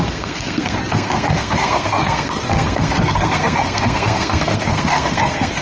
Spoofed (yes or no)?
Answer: yes